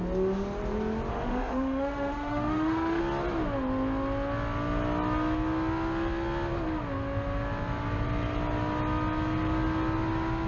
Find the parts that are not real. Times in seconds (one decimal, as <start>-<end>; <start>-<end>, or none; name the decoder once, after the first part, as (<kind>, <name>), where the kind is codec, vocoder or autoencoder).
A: 1.1-3.0 (autoencoder, DAC-VAE)